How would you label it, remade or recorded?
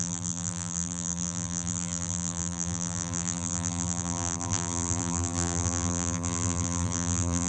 remade